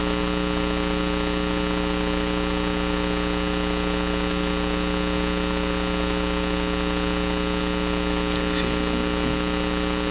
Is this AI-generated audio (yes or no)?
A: no